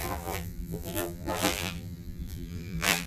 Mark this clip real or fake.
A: fake